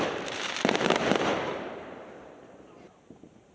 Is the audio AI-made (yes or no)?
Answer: yes